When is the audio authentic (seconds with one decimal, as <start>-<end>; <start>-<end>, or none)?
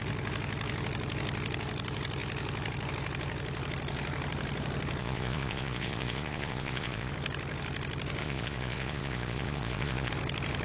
0.0-5.0; 7.1-8.2; 10.1-10.6